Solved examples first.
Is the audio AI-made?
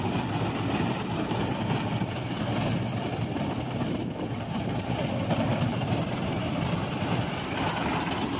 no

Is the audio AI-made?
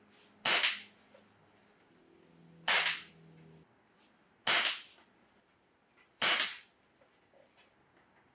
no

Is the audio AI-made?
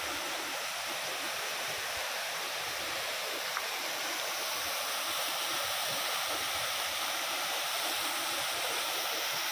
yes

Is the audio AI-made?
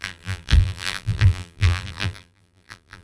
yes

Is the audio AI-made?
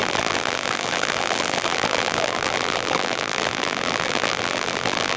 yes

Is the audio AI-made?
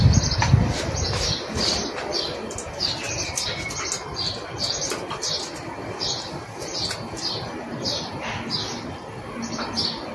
no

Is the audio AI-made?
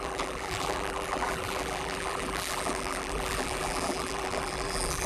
yes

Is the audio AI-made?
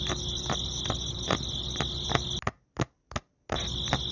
no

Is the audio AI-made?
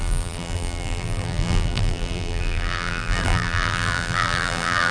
yes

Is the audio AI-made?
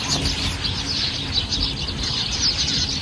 no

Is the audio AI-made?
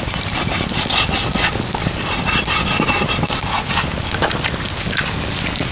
no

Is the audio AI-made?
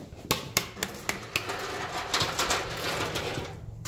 no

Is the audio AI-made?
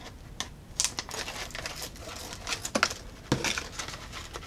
no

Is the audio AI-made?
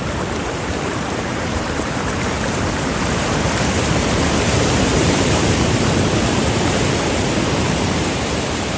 yes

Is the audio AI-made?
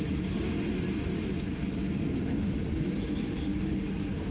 no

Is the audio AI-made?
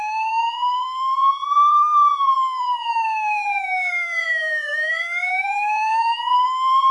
yes